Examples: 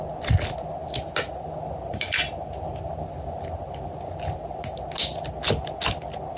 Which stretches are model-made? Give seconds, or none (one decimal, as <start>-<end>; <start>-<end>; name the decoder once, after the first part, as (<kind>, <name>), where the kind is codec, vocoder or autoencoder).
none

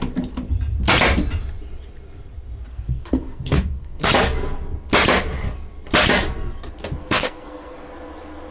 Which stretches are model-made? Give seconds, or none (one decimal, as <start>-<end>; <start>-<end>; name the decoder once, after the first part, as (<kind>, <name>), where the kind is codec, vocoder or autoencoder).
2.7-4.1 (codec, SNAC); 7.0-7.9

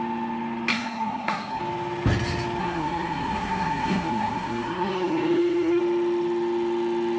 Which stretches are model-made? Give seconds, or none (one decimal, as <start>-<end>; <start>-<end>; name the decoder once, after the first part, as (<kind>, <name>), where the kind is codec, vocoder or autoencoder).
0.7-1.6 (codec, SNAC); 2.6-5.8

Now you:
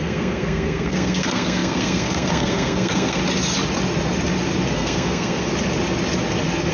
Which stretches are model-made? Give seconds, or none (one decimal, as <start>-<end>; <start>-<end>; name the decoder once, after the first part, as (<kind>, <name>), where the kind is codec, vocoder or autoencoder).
0.0-3.2 (codec, SNAC); 4.7-5.5

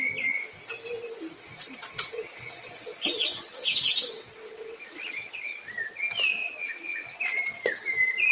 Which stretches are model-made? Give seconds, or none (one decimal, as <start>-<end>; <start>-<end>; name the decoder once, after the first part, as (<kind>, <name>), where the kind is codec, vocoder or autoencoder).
1.4-5.7 (vocoder, WaveNeXt); 6.4-7.2

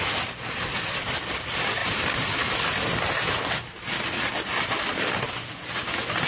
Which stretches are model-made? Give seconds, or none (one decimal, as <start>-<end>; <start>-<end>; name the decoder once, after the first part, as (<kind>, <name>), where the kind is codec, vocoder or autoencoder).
none

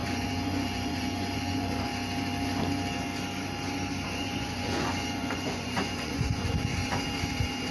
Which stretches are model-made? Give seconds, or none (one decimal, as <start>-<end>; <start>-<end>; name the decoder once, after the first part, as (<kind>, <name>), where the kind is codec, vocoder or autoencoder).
0.0-1.9 (vocoder, Vocos); 4.2-6.7

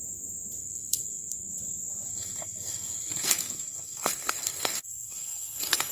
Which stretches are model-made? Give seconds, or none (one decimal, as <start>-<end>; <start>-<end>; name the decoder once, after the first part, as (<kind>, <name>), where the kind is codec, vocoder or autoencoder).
0.6-1.5 (codec, SNAC); 2.1-5.9